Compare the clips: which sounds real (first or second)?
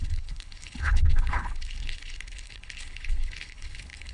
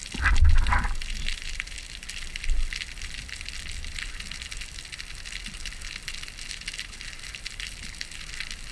second